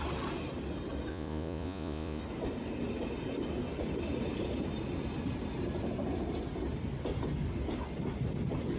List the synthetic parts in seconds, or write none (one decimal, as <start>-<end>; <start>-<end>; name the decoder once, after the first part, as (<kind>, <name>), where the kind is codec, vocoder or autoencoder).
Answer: 1.1-2.2 (vocoder, Vocos)